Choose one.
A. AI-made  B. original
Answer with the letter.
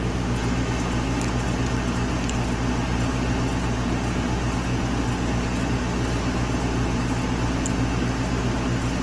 B